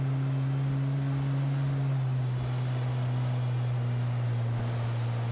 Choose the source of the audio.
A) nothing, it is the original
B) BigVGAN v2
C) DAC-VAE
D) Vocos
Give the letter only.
A